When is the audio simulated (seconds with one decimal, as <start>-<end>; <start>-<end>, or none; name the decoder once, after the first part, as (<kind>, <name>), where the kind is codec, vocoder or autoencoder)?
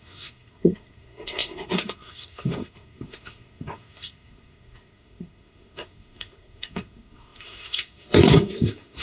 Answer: 0.0-9.0 (codec, SNAC)